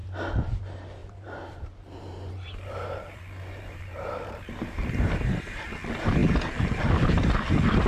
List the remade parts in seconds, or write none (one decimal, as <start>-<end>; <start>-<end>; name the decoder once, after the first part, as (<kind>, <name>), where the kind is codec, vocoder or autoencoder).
1.0-5.7 (vocoder, BigVGAN v2)

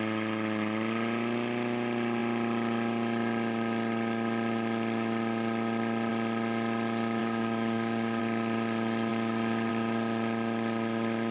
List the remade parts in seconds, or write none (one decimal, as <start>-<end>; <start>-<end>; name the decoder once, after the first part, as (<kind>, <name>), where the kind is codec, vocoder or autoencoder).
7.2-8.2 (codec, DAC)

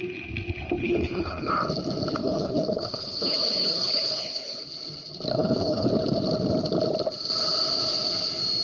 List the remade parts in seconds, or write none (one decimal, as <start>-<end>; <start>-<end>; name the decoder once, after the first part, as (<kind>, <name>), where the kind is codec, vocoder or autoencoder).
0.8-1.5 (codec, HILCodec); 2.2-4.7; 5.3-5.9

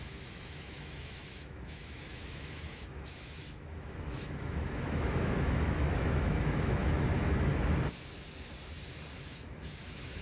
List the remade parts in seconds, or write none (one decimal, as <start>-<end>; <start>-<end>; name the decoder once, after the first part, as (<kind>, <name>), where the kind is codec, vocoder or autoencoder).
0.0-7.5 (autoencoder, DAC-VAE); 9.2-10.2

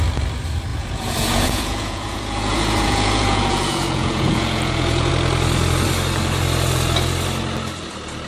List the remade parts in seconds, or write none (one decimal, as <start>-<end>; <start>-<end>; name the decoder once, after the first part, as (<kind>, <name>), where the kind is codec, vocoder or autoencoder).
0.7-5.1 (vocoder, Vocos)

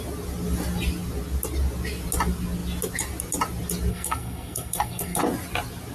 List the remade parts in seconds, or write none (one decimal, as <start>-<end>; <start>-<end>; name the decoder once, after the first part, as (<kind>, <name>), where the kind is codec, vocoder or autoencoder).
3.9-5.2 (codec, SNAC)